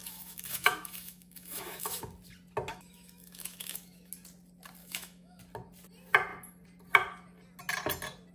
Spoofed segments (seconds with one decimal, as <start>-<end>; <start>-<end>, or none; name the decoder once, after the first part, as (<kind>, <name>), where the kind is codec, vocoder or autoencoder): 0.0-2.0 (autoencoder, DAC-VAE); 2.7-4.1; 4.8-5.4